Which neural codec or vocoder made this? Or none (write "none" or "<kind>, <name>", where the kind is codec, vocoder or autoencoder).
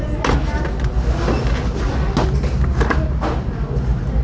none